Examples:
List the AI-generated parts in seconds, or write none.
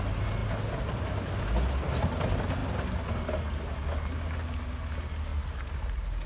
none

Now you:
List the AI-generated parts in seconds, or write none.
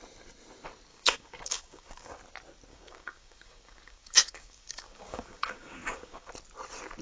0.9-2.2 (codec, DAC); 2.7-6.3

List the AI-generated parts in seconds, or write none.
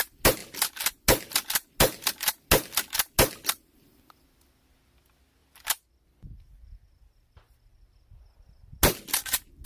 none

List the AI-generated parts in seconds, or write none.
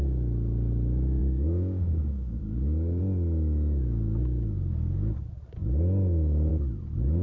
1.2-3.0 (codec, DAC)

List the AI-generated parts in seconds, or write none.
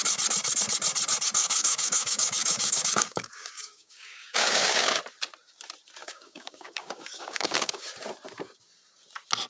1.4-5.0 (codec, DAC); 6.0-7.9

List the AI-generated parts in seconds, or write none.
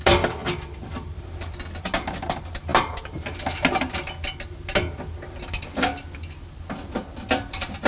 none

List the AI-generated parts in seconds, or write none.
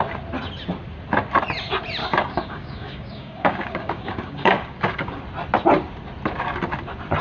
2.0-5.2 (codec, DAC)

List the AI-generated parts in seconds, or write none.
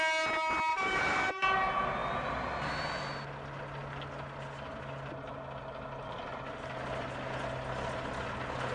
0.7-1.3 (codec, DAC)